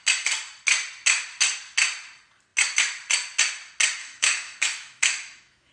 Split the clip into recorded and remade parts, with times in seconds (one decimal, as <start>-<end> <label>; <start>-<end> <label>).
0.0-4.0 recorded; 4.0-5.7 remade